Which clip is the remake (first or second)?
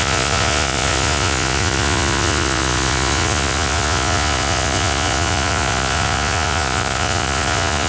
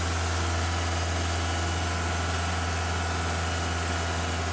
first